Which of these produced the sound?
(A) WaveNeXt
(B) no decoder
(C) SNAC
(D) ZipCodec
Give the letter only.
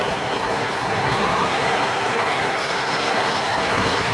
C